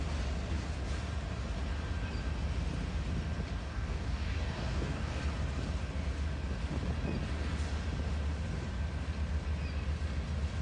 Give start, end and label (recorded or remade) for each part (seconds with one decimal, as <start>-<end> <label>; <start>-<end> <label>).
0.0-3.6 recorded; 3.6-5.2 remade; 5.2-10.6 recorded